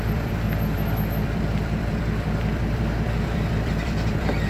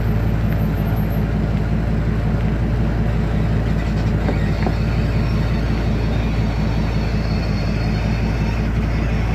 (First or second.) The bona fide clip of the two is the second